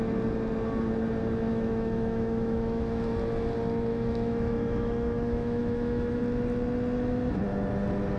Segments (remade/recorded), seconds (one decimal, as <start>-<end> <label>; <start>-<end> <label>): 0.0-1.5 recorded; 1.5-3.1 remade; 3.1-3.9 recorded; 3.9-6.2 remade; 6.2-8.2 recorded